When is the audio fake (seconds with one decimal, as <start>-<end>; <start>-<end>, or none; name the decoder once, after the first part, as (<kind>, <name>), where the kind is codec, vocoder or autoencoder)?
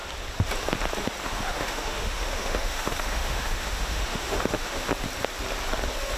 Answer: 1.2-4.9 (autoencoder, DAC-VAE)